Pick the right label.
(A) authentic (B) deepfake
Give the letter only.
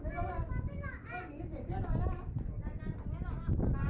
A